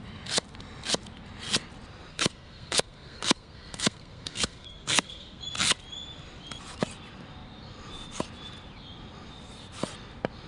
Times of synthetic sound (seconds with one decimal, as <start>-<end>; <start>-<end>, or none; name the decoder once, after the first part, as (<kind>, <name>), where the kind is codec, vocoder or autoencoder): 2.1-5.4 (codec, SNAC)